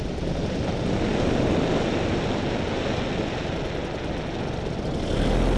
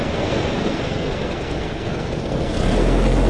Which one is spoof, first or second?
second